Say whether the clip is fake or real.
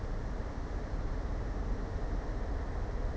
real